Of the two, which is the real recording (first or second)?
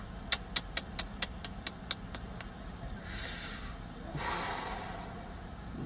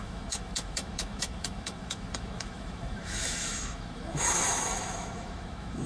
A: first